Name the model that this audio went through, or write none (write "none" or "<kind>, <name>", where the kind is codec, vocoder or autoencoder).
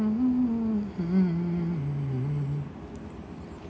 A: none